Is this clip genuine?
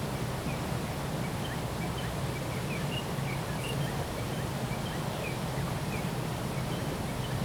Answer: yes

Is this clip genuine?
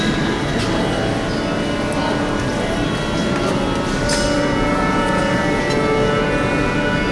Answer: yes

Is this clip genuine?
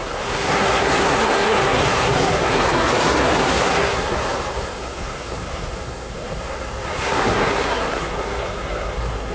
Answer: no